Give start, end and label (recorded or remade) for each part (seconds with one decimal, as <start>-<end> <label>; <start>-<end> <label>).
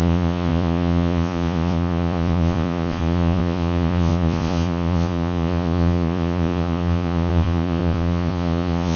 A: 0.0-9.0 remade